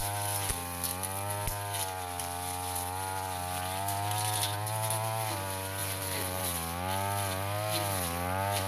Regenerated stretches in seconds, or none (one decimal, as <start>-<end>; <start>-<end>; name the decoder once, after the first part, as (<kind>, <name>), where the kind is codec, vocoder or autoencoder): 5.8-6.4 (vocoder, BigVGAN v2)